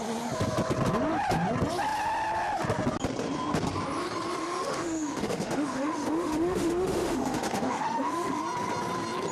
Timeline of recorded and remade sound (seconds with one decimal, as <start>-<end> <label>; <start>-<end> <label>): 0.0-4.4 recorded; 4.4-8.4 remade; 8.4-9.3 recorded